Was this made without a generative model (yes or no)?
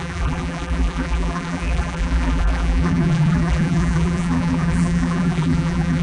no